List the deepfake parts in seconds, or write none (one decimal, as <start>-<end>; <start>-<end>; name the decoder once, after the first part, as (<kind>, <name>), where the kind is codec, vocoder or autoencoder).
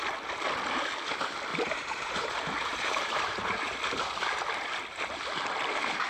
1.5-3.7 (vocoder, BigVGAN v2)